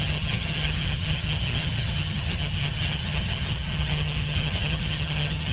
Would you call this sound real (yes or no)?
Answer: no